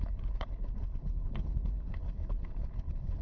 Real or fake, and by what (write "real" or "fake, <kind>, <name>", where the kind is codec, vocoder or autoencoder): fake, codec, HILCodec